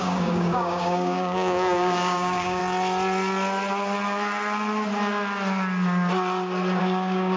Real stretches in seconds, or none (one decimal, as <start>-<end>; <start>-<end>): 2.6-6.8